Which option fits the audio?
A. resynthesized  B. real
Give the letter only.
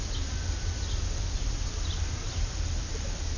B